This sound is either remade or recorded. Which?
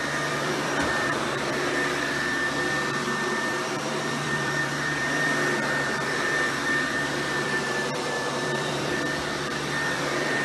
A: remade